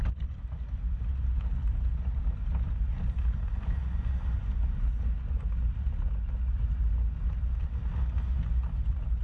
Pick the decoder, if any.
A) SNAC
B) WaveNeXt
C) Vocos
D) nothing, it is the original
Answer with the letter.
D